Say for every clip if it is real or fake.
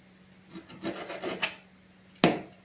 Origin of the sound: real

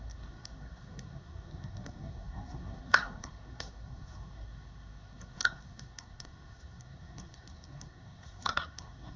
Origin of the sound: fake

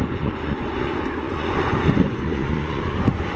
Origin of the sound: fake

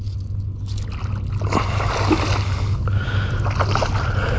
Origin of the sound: real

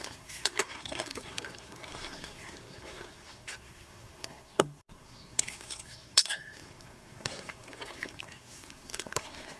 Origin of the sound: fake